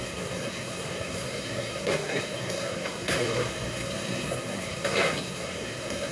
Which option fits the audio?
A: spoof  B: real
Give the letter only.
A